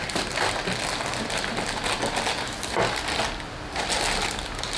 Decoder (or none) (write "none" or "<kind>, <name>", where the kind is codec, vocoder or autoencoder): none